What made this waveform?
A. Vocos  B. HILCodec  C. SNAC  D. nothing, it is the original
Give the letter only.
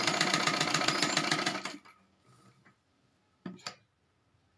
D